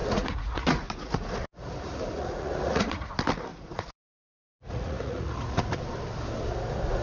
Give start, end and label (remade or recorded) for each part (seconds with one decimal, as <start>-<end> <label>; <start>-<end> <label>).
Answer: 0.0-3.1 remade; 3.1-3.5 recorded; 3.5-5.8 remade; 5.8-7.0 recorded